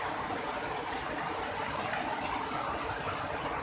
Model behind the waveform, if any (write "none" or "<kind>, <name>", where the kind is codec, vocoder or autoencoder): none